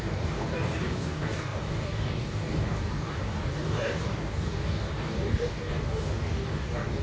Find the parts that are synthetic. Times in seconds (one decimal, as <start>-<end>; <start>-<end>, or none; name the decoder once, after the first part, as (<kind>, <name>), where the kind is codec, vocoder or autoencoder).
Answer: 0.0-7.0 (codec, DAC)